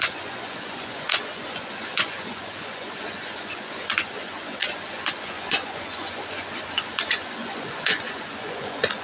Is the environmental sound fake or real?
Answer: fake